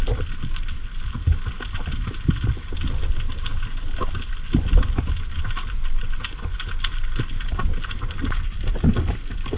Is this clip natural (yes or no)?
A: yes